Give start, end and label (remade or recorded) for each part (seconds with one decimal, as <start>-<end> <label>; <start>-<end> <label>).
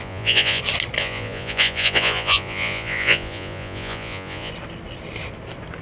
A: 0.0-0.6 remade; 0.6-1.0 recorded; 1.0-4.5 remade; 4.5-5.8 recorded